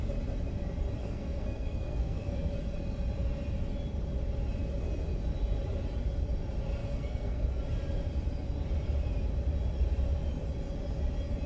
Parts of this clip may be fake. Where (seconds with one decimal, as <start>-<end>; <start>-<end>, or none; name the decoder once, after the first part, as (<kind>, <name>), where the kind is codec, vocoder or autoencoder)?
1.0-2.5 (codec, SNAC); 6.8-7.4